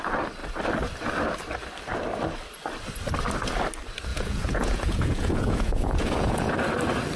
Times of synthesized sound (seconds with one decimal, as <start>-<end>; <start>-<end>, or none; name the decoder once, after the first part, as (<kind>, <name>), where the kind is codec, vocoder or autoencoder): 4.1-6.5 (vocoder, Vocos)